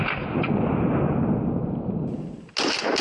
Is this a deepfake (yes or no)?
no